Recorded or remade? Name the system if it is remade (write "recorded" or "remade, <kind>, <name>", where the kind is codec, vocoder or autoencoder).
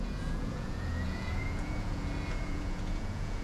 remade, vocoder, Vocos